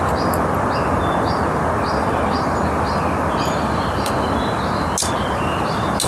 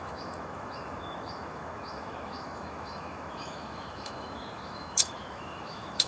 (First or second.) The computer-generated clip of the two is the second